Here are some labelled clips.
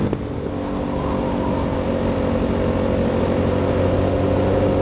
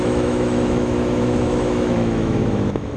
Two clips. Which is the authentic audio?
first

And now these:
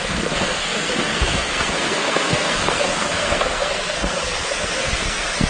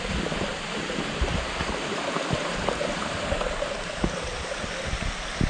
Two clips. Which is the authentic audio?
second